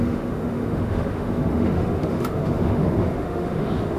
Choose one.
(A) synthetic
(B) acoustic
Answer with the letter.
A